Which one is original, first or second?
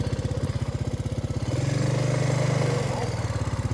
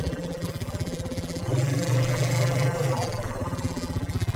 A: first